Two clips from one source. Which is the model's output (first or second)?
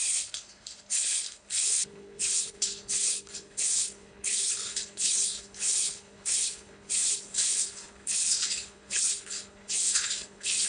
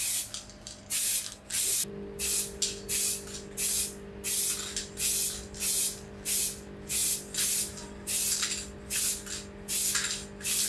first